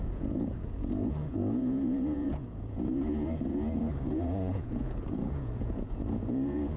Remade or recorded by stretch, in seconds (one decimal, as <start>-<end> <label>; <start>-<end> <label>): 0.0-6.8 remade